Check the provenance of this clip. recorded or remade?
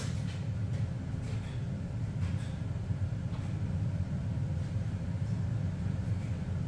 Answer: recorded